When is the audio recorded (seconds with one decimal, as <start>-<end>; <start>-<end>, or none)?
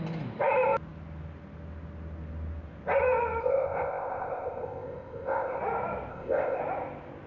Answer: 0.0-3.4; 5.6-6.1; 6.6-7.3